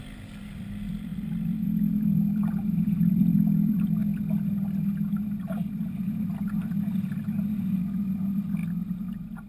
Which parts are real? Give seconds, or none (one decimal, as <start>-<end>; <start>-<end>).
4.0-7.8; 8.6-9.5